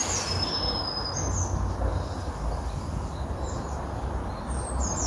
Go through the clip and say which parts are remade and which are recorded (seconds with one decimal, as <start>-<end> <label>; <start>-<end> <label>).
0.0-5.1 recorded

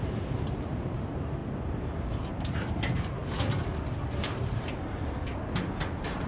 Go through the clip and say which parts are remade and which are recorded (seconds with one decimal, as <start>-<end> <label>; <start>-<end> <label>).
0.0-3.2 remade; 3.2-4.2 recorded; 4.2-6.3 remade

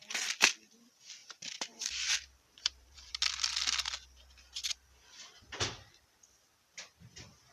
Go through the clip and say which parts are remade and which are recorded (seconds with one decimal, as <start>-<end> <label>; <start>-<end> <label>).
0.0-1.2 recorded; 1.2-3.1 remade; 3.1-7.5 recorded

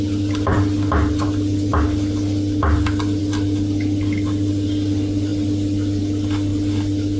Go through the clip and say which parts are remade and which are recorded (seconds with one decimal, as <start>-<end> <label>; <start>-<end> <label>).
0.0-7.2 recorded

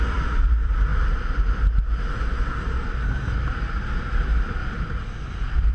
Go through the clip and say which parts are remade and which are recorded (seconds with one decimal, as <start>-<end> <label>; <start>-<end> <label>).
0.0-0.9 remade; 0.9-4.0 recorded; 4.0-4.6 remade; 4.6-5.7 recorded

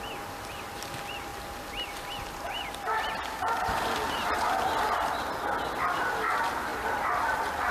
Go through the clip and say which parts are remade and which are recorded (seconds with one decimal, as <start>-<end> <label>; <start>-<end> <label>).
0.0-1.3 recorded; 1.3-3.1 remade; 3.1-7.7 recorded

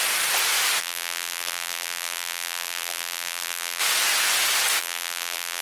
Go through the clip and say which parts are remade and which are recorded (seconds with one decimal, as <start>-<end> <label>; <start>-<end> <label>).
0.0-0.8 recorded; 0.8-3.8 remade; 3.8-4.8 recorded; 4.8-5.6 remade